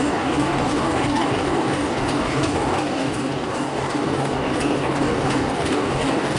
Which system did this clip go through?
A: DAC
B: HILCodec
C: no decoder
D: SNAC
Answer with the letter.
A